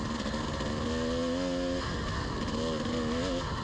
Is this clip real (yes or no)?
yes